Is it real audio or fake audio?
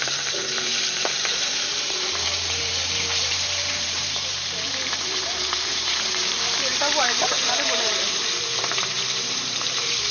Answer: fake